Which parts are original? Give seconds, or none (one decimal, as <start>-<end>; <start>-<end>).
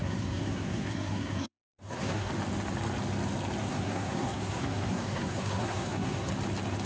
2.3-3.6; 6.3-6.9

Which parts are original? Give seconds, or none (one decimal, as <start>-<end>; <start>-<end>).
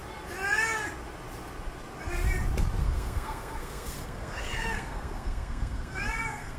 0.0-2.8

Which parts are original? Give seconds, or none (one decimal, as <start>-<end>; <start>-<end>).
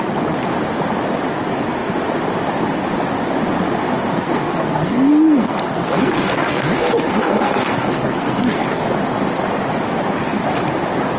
0.0-4.1; 8.8-11.2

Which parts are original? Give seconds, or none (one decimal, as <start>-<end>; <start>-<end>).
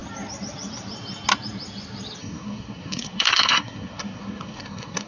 0.0-2.2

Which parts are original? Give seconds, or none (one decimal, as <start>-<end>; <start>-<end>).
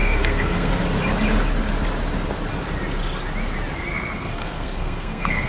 0.7-3.9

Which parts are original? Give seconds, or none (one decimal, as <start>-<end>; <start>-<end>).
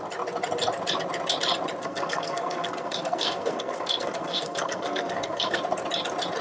0.0-1.8; 5.6-6.4